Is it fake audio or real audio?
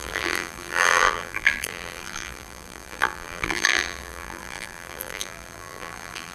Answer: fake